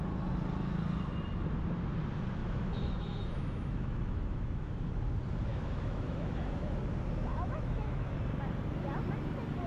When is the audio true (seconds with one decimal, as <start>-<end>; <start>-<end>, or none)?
0.0-2.4; 4.9-5.5; 6.8-7.3; 8.1-9.7